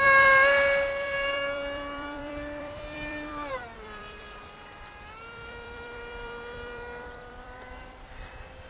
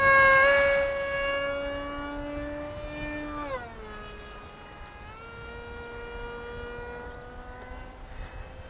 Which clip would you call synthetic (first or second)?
first